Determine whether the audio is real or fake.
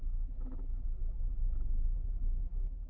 fake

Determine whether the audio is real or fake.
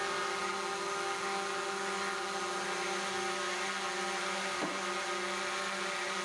real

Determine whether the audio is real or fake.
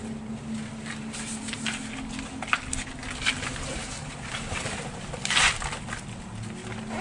real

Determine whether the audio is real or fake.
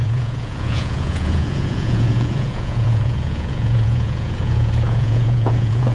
fake